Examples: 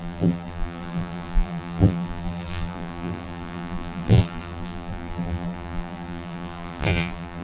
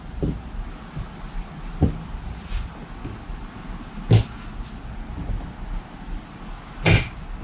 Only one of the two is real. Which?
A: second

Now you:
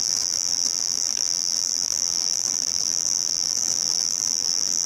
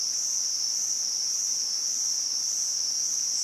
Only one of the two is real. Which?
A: second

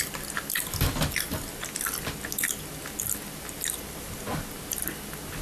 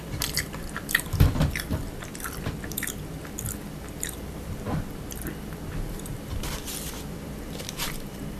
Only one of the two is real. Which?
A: first